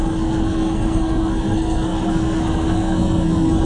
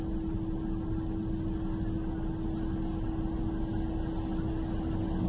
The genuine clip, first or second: second